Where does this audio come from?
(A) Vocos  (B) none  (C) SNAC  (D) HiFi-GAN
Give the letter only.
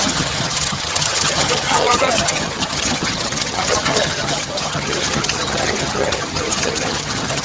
D